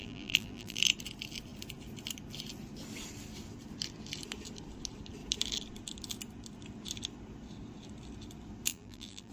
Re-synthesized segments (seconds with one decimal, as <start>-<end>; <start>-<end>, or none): 0.0-0.8; 8.7-9.3